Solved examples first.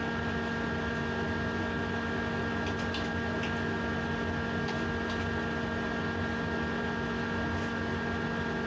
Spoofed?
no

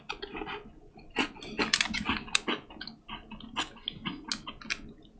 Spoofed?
no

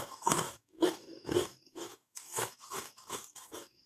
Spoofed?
yes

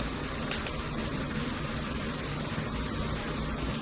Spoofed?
no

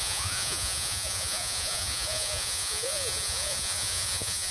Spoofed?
yes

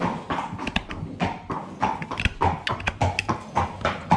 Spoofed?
no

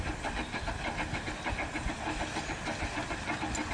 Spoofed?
no